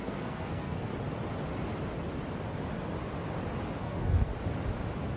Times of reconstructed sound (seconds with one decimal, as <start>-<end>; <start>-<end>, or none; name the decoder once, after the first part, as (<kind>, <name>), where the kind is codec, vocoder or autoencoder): 0.0-0.9 (codec, SNAC); 3.8-4.3